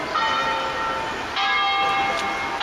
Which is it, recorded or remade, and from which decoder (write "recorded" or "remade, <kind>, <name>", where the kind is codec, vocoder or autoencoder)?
recorded